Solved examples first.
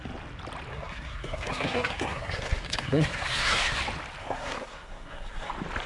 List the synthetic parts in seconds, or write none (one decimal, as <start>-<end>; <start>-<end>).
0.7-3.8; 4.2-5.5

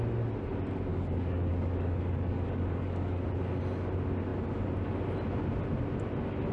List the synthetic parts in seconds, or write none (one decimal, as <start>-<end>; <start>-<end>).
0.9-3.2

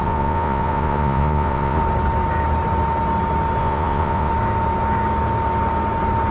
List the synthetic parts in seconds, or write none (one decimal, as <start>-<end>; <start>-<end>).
0.0-1.8; 3.6-4.3

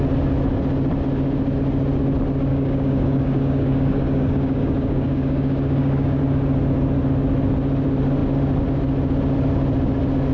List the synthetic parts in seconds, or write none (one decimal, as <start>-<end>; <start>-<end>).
2.5-6.2

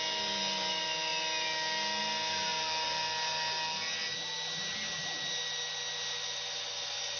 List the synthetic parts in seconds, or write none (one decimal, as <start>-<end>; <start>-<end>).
none

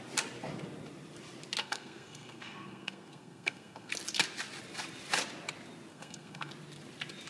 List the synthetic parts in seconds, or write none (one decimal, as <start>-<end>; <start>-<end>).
1.6-3.9; 5.9-6.5

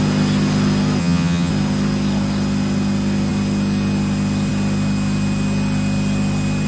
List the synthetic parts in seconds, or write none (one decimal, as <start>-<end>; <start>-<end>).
1.0-1.5

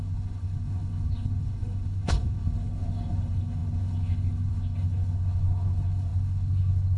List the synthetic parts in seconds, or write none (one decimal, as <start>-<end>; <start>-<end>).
0.0-7.0